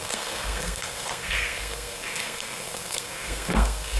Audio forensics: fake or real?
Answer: fake